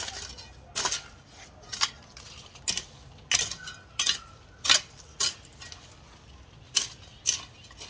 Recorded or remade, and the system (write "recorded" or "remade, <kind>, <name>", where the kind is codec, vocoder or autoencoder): recorded